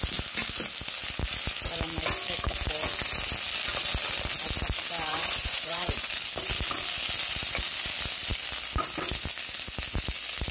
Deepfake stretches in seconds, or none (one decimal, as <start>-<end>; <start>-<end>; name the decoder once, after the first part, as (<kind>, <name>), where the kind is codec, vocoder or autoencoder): 5.1-6.1 (vocoder, Vocos)